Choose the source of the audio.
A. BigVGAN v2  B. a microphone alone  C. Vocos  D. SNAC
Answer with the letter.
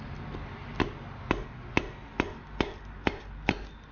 B